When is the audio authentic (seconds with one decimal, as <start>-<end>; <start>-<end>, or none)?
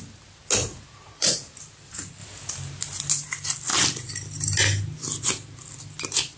0.0-0.6; 1.5-6.4